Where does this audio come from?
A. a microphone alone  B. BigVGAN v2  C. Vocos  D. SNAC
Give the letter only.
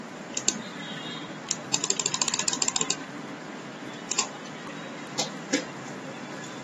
B